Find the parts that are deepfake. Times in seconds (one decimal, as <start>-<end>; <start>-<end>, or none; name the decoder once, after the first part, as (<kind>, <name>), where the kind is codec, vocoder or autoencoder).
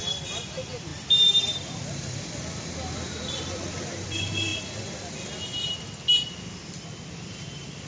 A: 0.0-4.5 (vocoder, BigVGAN v2); 7.1-7.9